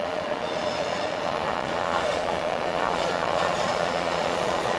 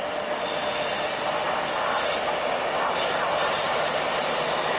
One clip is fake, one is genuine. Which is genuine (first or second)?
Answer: second